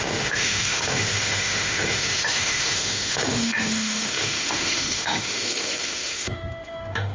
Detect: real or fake fake